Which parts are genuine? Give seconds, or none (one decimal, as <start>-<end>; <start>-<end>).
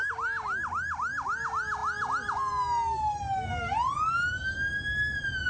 0.0-5.5